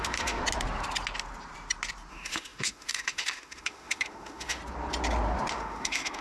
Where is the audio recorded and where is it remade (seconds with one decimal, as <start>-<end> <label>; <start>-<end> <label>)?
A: 0.0-0.4 remade; 0.4-2.1 recorded; 2.1-4.6 remade; 4.6-5.5 recorded; 5.5-6.2 remade

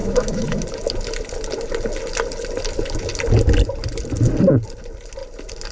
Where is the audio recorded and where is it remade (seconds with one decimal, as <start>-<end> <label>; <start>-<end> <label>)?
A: 0.0-0.6 remade; 0.6-5.7 recorded